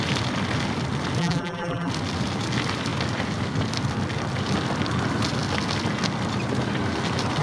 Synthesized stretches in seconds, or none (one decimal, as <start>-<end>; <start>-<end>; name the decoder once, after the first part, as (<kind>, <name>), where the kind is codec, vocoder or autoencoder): 1.2-1.9 (vocoder, BigVGAN v2)